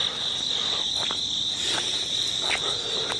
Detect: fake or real real